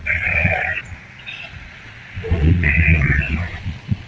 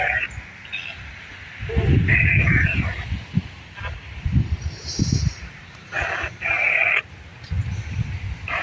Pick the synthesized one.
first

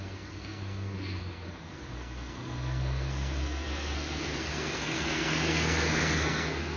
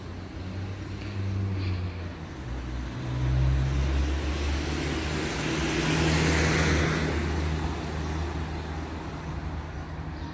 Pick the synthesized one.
first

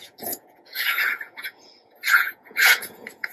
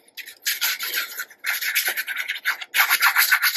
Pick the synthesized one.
first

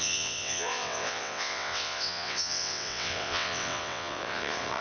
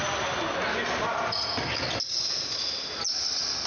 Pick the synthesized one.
first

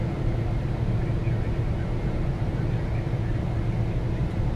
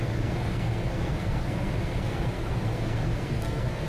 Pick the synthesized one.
second